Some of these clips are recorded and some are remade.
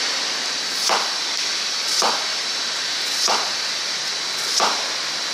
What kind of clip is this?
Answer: remade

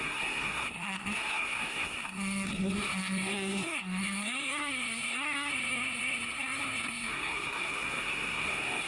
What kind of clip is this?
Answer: remade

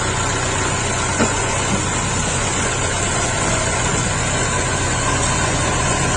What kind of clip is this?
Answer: remade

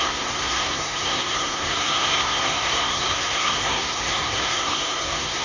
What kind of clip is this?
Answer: remade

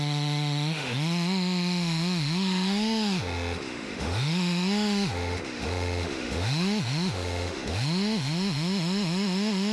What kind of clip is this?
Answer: remade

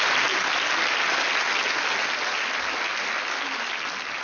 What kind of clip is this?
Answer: recorded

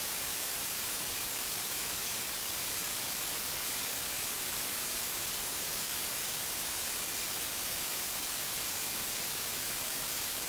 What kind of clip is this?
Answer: remade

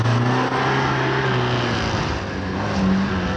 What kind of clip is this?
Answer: recorded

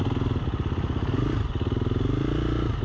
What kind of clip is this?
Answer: recorded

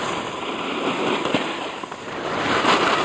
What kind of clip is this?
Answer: recorded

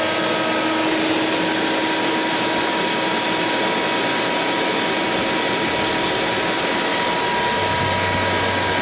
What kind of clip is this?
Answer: recorded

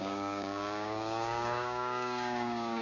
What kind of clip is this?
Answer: remade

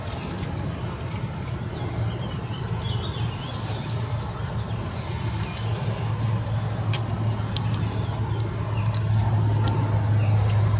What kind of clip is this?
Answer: recorded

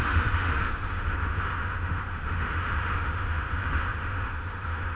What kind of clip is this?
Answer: remade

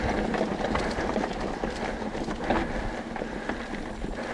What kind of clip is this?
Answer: recorded